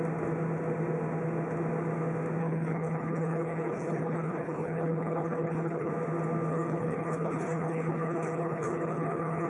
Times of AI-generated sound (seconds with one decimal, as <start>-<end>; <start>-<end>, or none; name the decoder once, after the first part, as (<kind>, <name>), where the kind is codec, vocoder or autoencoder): 2.4-5.9 (codec, HILCodec); 6.5-9.5